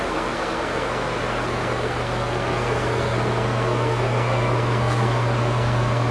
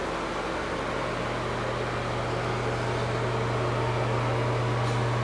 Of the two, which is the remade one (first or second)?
first